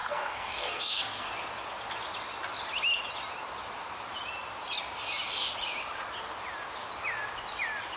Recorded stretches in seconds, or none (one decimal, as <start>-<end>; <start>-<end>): 1.3-8.0